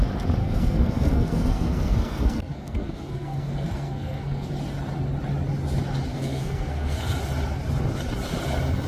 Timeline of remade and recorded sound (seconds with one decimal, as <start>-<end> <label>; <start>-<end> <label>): 0.0-0.4 recorded; 0.4-4.5 remade; 4.5-6.1 recorded; 6.1-7.0 remade; 7.0-8.9 recorded